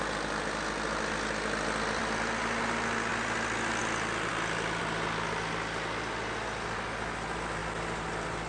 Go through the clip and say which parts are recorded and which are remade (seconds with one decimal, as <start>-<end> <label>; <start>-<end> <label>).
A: 0.0-8.5 recorded